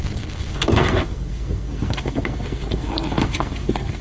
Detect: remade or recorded remade